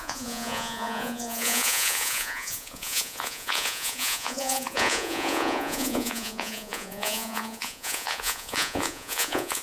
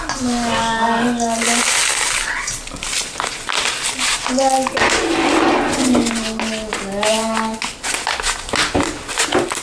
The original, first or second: second